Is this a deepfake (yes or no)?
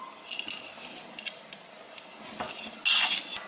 no